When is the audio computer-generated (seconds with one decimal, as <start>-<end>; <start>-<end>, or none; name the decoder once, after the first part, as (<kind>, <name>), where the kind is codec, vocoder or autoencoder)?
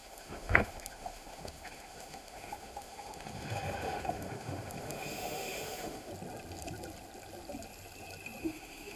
0.0-6.1 (autoencoder, DAC-VAE); 8.4-9.0